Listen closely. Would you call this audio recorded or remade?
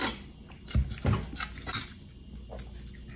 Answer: recorded